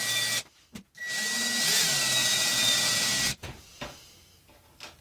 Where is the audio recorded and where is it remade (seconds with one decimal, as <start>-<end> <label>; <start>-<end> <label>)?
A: 0.0-2.2 recorded; 2.2-4.3 remade; 4.3-5.0 recorded